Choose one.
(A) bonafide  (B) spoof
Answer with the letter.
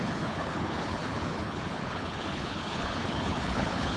B